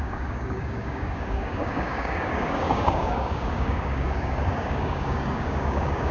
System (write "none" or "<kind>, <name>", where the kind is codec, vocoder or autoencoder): codec, DAC